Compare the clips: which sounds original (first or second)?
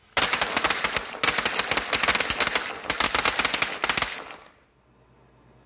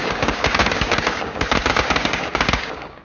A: first